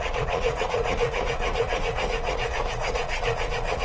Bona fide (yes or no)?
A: no